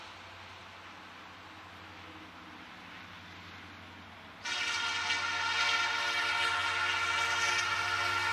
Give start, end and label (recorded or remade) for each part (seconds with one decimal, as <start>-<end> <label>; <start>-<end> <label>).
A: 0.0-8.3 recorded